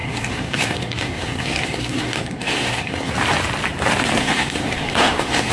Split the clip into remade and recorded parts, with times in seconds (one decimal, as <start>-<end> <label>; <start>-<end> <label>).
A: 0.0-3.1 remade; 3.1-4.2 recorded; 4.2-5.5 remade